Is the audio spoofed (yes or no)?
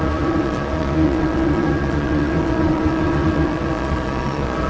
yes